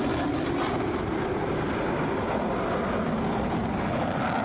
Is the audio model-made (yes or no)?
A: no